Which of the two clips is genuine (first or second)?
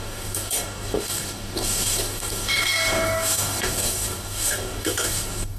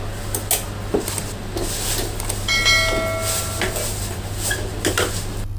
second